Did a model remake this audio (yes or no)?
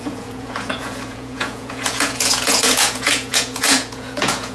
yes